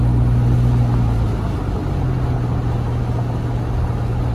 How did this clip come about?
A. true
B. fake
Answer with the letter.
A